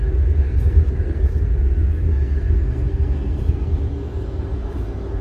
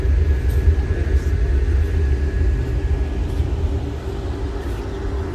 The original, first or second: second